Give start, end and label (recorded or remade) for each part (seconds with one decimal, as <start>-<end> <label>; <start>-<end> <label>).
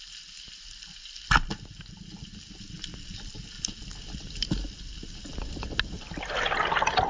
0.0-7.1 recorded